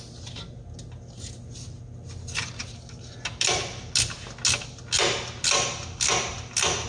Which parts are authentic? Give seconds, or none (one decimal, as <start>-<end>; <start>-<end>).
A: 0.0-6.9

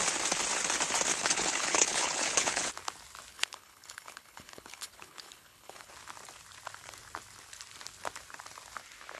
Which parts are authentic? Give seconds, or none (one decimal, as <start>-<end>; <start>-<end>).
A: 0.0-1.1; 2.7-3.3; 5.9-9.2

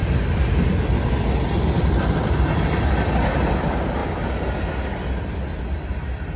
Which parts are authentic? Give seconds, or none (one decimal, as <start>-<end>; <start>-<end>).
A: 4.0-6.4

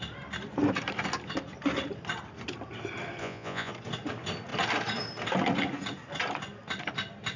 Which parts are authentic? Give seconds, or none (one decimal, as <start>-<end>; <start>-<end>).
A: 0.0-3.2; 3.7-7.4

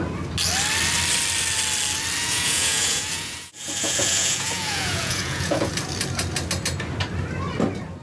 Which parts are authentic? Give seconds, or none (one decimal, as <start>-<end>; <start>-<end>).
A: 0.0-2.2; 5.7-8.0

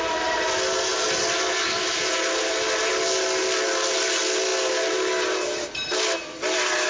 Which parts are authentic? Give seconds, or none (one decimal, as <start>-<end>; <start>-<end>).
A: 0.0-6.9

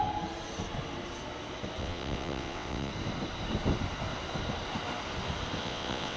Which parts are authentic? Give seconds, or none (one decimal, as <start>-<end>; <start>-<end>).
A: 0.0-1.8; 2.9-5.6